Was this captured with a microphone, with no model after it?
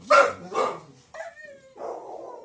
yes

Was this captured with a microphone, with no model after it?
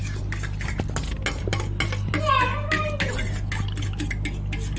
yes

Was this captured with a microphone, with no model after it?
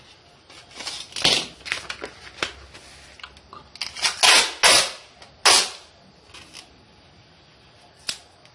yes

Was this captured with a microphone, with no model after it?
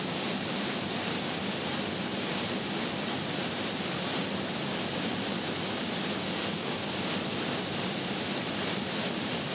yes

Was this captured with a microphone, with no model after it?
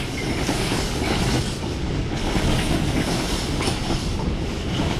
no